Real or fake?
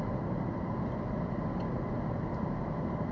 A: real